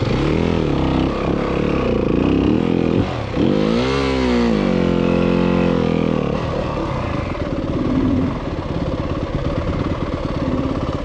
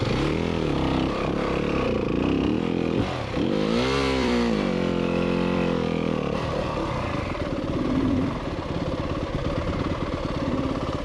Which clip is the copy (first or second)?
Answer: second